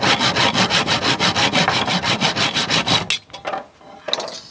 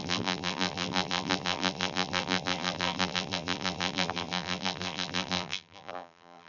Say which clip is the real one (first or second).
first